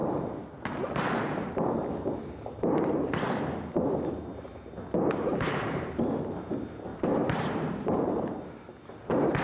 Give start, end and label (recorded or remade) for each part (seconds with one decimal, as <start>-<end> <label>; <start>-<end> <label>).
0.0-1.6 remade; 1.6-5.3 recorded; 5.3-6.0 remade; 6.0-6.9 recorded; 6.9-8.7 remade; 8.7-9.4 recorded